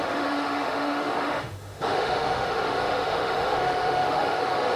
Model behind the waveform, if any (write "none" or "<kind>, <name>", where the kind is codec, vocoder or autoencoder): autoencoder, DAC-VAE